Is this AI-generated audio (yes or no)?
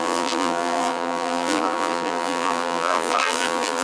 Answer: yes